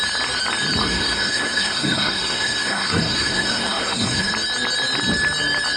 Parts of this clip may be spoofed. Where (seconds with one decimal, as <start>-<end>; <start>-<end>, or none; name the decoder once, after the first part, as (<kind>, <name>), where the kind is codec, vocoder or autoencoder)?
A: 0.8-4.3 (codec, SNAC)